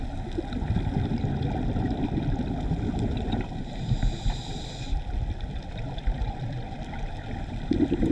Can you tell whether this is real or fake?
real